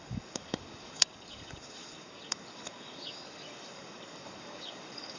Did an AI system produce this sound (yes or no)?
yes